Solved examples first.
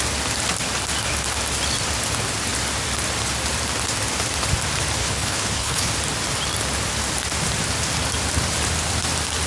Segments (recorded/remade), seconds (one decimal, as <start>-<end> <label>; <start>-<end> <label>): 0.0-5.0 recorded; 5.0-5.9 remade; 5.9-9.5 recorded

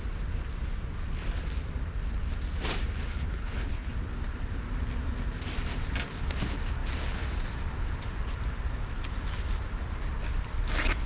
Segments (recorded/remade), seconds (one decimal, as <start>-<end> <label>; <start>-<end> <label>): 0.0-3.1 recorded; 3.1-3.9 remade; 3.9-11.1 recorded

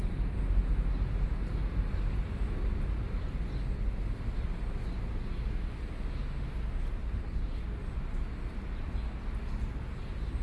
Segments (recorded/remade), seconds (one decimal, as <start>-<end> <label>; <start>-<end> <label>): 0.0-7.0 recorded; 7.0-7.6 remade; 7.6-10.4 recorded

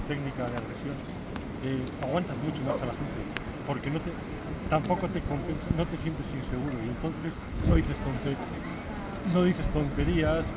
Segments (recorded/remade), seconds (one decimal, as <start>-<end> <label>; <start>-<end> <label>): 0.0-7.2 recorded; 7.2-7.8 remade; 7.8-10.6 recorded

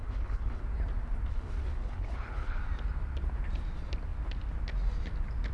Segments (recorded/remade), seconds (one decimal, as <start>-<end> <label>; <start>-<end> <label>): 0.0-0.6 remade; 0.6-1.3 recorded; 1.3-2.6 remade; 2.6-5.5 recorded

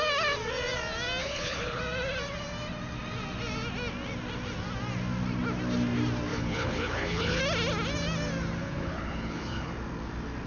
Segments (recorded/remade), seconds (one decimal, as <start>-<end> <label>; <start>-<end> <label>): 0.0-1.2 recorded; 1.2-1.8 remade; 1.8-6.3 recorded; 6.3-7.4 remade; 7.4-8.6 recorded; 8.6-9.7 remade; 9.7-10.5 recorded

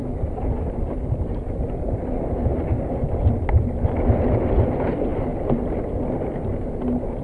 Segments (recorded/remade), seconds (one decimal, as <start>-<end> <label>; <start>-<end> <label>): 0.0-7.2 recorded

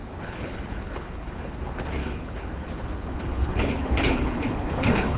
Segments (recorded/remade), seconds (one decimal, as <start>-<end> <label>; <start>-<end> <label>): 0.0-1.5 remade; 1.5-2.0 recorded; 2.0-5.2 remade